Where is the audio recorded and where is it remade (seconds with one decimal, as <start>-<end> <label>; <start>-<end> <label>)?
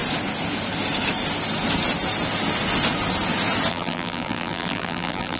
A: 0.0-3.7 recorded; 3.7-5.4 remade